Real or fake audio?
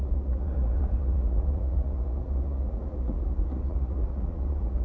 fake